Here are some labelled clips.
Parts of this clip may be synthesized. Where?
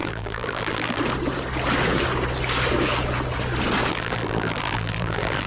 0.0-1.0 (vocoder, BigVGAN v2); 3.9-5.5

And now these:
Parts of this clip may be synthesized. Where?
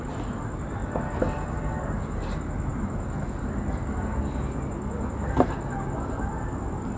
none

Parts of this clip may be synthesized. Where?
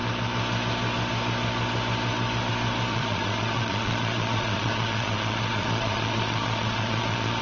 2.9-7.4 (vocoder, Vocos)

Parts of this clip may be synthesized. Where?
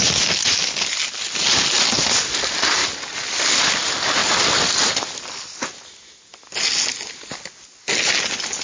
2.8-3.6 (vocoder, BigVGAN v2); 4.2-5.0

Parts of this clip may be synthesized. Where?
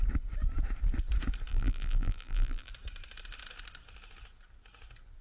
1.5-2.7 (vocoder, BigVGAN v2)